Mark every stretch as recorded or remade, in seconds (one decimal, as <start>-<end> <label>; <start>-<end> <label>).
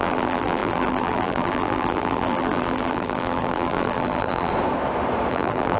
0.0-4.5 remade; 4.5-5.3 recorded; 5.3-5.8 remade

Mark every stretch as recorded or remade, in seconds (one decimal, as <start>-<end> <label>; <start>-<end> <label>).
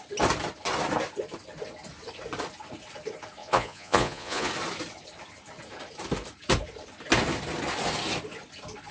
0.0-3.4 recorded; 3.4-4.5 remade; 4.5-8.9 recorded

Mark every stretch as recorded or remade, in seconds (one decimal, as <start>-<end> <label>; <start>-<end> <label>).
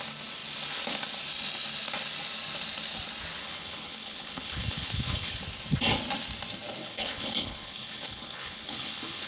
0.0-3.4 recorded; 3.4-5.4 remade; 5.4-6.8 recorded; 6.8-9.3 remade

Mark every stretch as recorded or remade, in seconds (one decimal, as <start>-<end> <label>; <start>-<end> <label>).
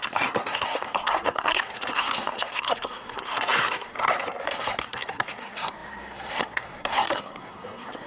0.0-8.1 remade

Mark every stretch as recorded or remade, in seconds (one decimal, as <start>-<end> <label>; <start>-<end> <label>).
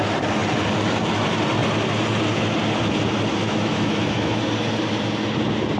0.0-3.4 recorded; 3.4-4.4 remade; 4.4-5.8 recorded